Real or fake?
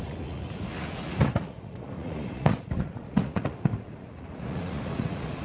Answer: fake